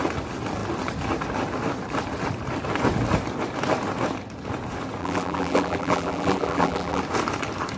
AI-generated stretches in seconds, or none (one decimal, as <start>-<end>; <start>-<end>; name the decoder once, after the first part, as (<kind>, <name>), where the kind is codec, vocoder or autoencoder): 5.0-7.0 (vocoder, BigVGAN v2)

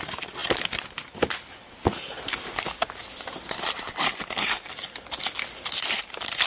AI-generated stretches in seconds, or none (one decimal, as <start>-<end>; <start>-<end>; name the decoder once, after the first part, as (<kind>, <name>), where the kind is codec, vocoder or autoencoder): none

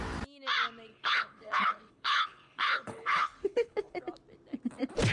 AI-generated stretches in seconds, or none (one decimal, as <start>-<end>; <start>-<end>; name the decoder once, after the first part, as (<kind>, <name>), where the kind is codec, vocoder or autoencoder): 0.9-4.0 (codec, HILCodec)

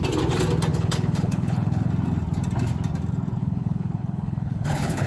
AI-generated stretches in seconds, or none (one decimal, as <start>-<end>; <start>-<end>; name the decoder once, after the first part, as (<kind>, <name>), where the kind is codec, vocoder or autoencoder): 0.7-1.9 (codec, HILCodec); 3.4-5.1

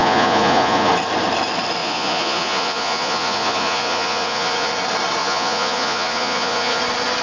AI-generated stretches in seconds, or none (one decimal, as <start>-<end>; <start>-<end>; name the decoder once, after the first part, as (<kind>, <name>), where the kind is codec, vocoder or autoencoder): 0.0-0.9 (vocoder, Vocos); 1.8-4.7; 5.2-6.8

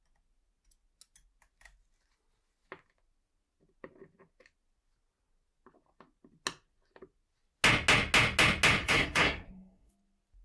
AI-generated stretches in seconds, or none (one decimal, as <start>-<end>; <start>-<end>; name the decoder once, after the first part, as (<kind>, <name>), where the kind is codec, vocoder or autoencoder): 8.8-9.9 (codec, SNAC)